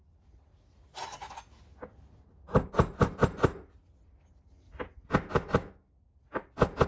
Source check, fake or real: real